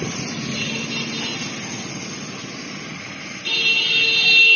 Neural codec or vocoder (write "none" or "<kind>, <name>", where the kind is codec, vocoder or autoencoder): none